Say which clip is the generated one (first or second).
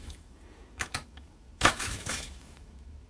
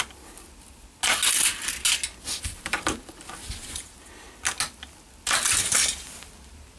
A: first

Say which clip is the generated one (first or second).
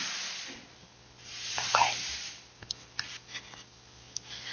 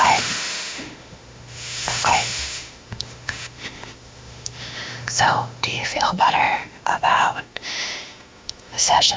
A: second